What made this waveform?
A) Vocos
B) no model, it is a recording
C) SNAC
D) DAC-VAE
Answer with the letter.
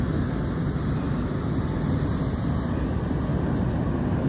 B